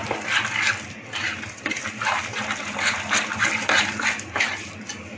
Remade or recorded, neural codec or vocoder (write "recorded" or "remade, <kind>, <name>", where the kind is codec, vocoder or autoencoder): recorded